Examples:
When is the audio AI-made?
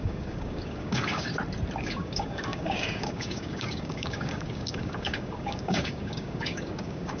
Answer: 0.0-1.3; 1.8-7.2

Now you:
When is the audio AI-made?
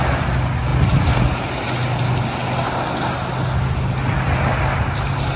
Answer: none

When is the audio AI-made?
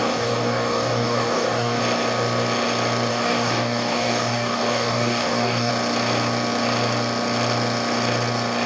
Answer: 0.0-1.8; 3.1-5.7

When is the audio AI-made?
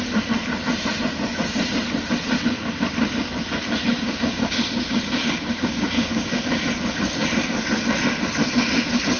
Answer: 3.9-6.4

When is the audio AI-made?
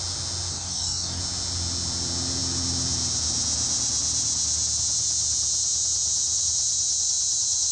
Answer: 0.5-1.2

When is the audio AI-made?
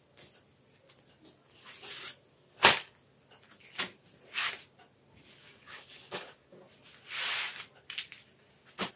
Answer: 5.4-6.6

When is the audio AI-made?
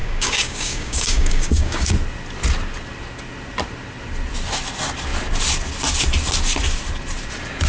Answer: 0.0-1.9